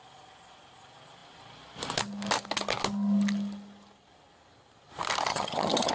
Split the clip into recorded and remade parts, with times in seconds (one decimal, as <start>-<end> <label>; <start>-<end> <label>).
0.0-5.3 recorded; 5.3-5.9 remade